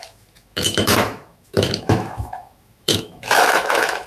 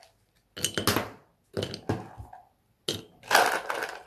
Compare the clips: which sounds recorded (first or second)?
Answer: second